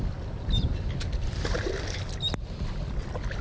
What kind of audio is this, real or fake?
real